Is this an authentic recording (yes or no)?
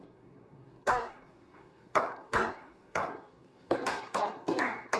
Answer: no